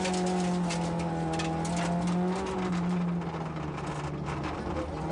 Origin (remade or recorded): recorded